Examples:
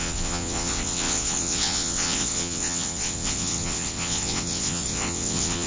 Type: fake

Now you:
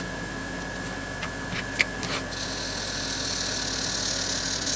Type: real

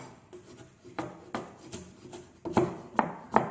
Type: real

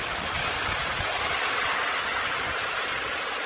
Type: real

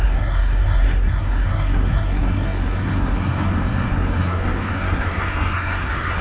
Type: fake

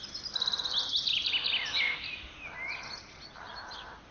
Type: real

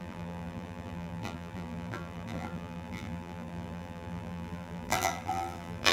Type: fake